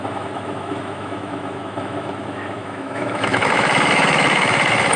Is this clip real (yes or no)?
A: no